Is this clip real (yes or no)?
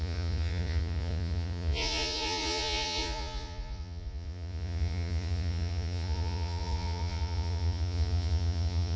no